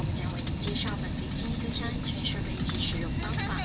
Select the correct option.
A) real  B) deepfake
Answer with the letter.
A